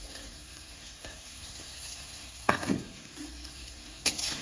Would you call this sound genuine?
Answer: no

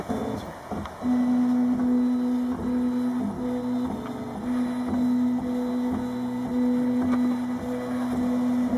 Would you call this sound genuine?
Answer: yes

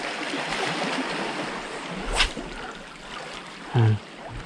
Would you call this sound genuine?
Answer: yes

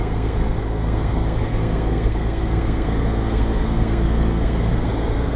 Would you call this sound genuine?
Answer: no